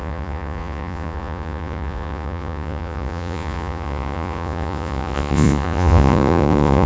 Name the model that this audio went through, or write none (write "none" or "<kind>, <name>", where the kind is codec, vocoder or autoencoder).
vocoder, Vocos